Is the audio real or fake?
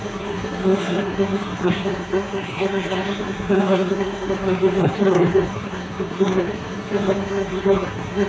fake